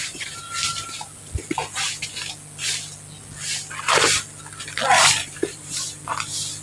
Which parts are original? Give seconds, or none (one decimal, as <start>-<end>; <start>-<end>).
0.5-5.2; 6.0-6.6